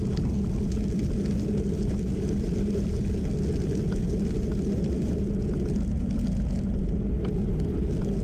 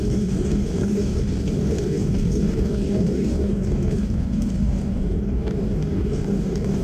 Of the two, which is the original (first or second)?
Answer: first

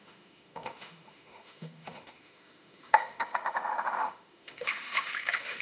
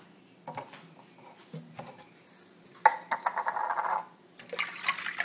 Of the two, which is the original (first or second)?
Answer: second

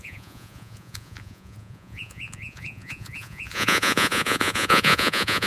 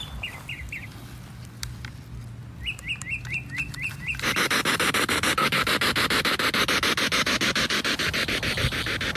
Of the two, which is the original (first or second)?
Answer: second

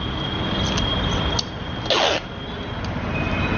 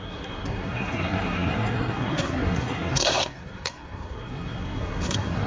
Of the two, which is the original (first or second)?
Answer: first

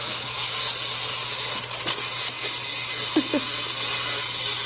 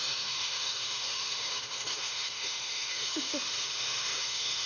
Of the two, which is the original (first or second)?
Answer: first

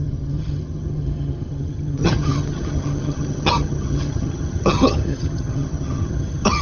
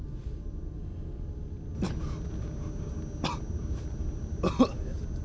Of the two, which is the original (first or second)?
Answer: second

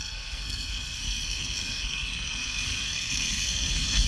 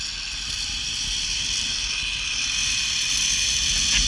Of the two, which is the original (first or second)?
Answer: second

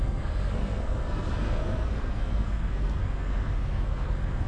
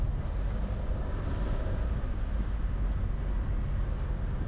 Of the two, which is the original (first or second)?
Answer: second